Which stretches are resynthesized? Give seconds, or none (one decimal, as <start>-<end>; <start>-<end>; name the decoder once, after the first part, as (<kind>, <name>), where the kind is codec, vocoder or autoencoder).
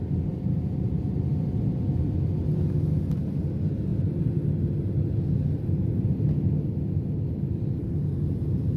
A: none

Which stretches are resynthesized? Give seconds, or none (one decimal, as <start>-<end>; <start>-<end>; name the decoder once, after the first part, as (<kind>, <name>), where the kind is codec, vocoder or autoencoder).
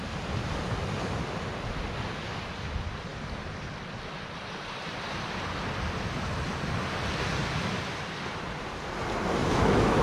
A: 9.4-10.0 (autoencoder, DAC-VAE)